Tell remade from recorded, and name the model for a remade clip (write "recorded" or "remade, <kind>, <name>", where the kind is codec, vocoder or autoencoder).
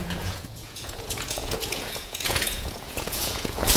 remade, vocoder, Vocos